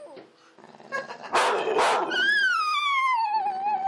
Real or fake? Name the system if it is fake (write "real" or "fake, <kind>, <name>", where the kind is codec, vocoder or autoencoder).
real